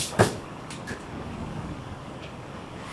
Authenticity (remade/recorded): remade